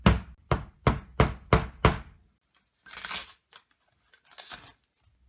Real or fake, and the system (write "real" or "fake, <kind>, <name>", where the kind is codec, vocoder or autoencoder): real